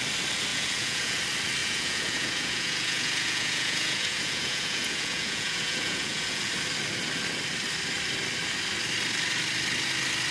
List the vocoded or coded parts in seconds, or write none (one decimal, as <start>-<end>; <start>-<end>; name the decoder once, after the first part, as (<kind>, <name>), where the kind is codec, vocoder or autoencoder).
0.5-1.2 (vocoder, Vocos); 1.6-6.5